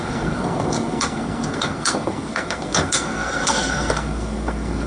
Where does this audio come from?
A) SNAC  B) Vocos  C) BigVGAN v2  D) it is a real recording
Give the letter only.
A